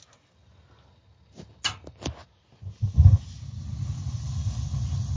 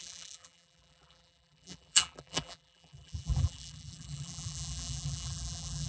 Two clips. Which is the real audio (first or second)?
first